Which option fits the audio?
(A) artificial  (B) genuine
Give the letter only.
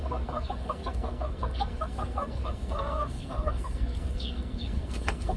A